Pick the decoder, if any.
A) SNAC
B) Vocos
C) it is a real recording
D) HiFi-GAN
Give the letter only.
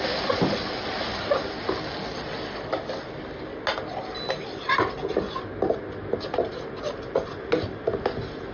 C